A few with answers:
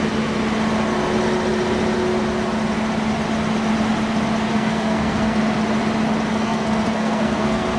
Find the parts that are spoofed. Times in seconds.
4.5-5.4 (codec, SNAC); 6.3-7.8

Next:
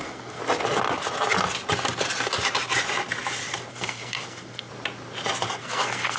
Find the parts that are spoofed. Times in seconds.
0.0-0.4 (codec, SNAC); 3.7-4.7; 5.5-6.2

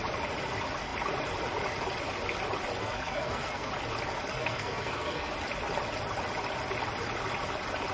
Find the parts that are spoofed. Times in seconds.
2.8-3.7 (codec, SNAC); 4.3-5.3

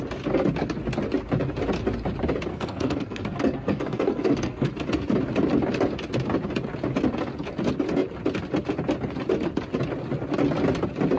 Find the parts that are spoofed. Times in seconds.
2.5-4.7 (codec, SNAC)

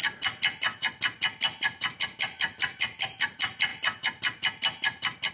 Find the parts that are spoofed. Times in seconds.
none

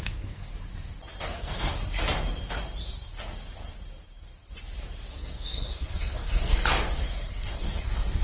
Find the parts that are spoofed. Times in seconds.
0.0-0.5 (codec, SNAC); 1.2-1.8; 5.1-8.2